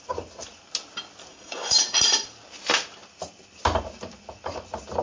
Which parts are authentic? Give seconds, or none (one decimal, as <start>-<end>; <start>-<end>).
0.0-1.3; 1.9-5.0